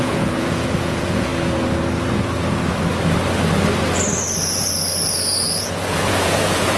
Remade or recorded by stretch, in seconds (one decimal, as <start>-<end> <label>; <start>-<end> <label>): 0.0-1.3 remade; 1.3-5.4 recorded; 5.4-6.8 remade